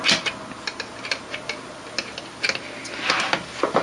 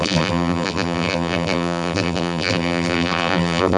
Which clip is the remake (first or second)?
second